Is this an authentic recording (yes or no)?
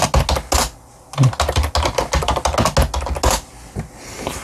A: yes